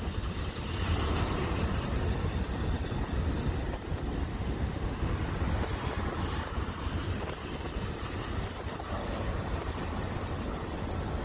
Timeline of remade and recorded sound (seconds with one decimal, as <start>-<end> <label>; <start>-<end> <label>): 0.0-4.3 recorded; 4.3-5.1 remade; 5.1-11.2 recorded